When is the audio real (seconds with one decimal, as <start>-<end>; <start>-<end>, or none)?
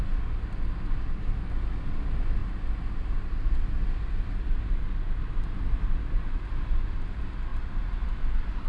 0.0-8.7